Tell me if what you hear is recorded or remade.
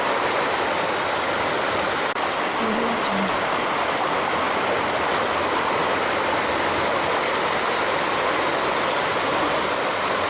recorded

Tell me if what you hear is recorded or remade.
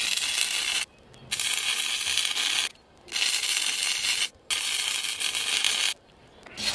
recorded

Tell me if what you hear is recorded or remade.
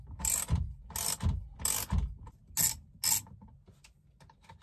recorded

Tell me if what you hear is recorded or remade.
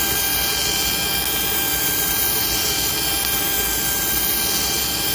recorded